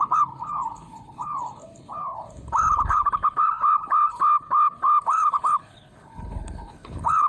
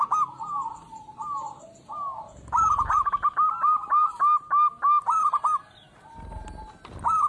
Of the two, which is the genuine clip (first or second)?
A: second